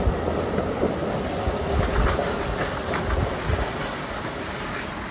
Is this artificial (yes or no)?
no